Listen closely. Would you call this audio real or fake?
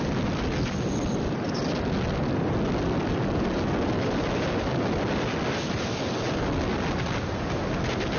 real